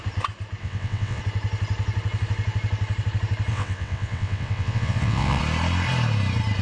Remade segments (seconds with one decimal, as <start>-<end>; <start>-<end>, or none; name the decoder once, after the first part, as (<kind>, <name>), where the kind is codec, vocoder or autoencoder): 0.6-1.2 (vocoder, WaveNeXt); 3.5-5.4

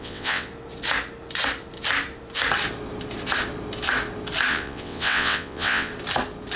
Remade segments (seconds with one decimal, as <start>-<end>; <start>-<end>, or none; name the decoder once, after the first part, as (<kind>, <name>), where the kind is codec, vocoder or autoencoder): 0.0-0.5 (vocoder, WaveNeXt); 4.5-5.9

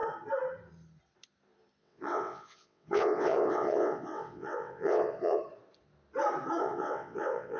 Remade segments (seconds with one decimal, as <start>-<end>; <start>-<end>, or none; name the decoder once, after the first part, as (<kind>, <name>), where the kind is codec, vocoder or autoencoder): 1.8-5.4 (vocoder, WaveNeXt); 6.6-7.6

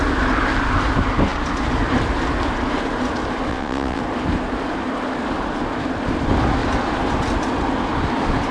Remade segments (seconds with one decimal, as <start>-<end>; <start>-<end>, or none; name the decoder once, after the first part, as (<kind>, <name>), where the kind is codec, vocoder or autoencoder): 3.5-4.0 (vocoder, WaveNeXt)

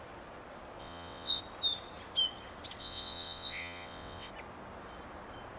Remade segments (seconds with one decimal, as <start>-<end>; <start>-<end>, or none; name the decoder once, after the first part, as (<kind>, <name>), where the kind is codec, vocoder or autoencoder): 0.8-1.4 (vocoder, WaveNeXt); 2.8-4.3